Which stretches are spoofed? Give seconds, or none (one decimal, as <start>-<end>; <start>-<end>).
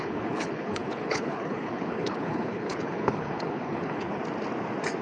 0.0-4.2